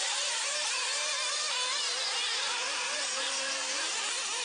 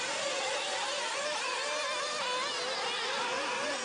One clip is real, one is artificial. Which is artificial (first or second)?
first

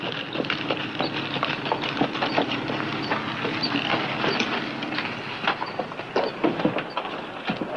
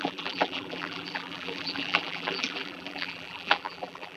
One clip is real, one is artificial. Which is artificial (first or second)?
second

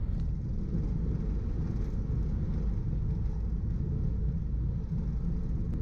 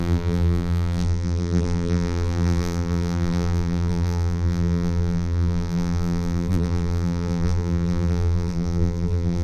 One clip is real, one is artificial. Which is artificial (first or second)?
second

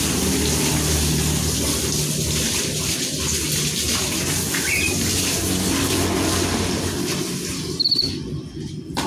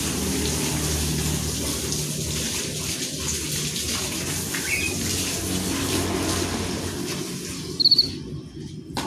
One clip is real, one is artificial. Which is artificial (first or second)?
first